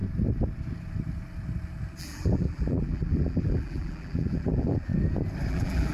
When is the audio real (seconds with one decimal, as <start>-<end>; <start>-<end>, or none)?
0.0-2.0; 4.9-5.5